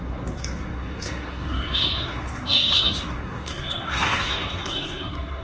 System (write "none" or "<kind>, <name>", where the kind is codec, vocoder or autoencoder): codec, SNAC